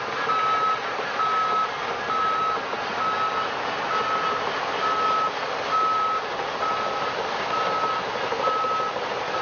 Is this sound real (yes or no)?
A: yes